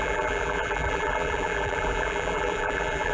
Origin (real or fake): fake